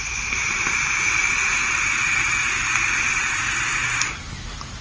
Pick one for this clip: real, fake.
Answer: real